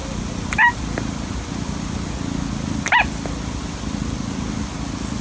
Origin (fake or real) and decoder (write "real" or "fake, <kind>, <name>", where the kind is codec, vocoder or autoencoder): real